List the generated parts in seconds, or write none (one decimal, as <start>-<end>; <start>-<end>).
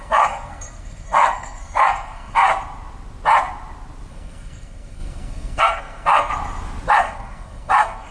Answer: 0.0-2.5; 4.1-6.3; 6.9-8.1